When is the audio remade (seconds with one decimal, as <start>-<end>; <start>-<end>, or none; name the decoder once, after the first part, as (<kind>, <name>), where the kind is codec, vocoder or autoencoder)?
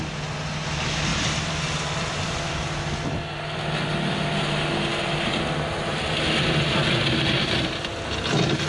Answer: 1.1-2.9 (vocoder, BigVGAN v2)